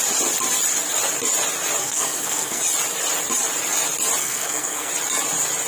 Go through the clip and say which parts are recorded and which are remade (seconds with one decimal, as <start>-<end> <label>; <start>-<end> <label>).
0.0-1.8 recorded; 1.8-2.6 remade; 2.6-4.2 recorded; 4.2-4.9 remade; 4.9-5.7 recorded